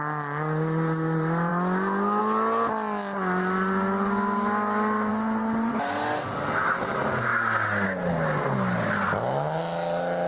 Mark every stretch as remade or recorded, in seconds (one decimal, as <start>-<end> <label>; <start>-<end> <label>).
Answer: 0.0-10.3 recorded